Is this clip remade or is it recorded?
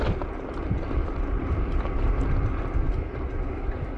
recorded